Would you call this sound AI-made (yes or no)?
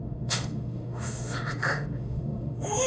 yes